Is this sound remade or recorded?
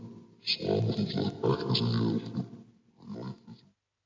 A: recorded